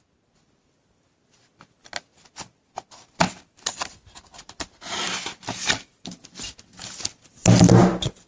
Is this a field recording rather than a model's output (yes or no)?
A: yes